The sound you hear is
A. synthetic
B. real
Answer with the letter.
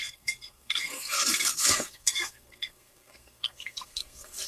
A